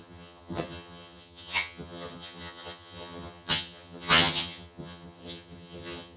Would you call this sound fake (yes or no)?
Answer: yes